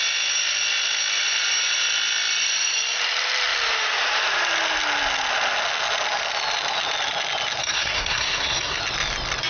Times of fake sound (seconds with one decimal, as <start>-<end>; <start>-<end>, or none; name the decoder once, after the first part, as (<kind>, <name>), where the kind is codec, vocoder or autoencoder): 7.6-8.8 (codec, SNAC)